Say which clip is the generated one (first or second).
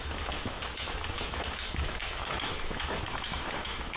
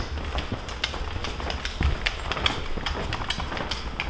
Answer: first